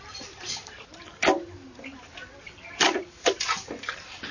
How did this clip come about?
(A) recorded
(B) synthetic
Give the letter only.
A